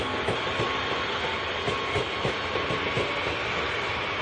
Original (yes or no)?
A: yes